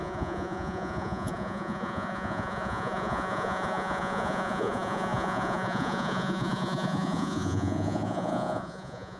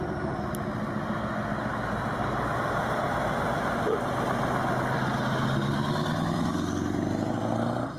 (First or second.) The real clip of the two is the second